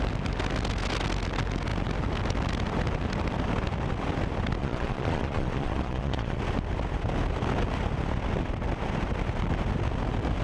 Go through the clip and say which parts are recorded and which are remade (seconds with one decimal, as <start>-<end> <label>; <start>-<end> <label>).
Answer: 0.0-4.6 recorded; 4.6-6.4 remade; 6.4-10.4 recorded